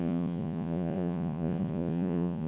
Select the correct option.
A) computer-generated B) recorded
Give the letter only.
A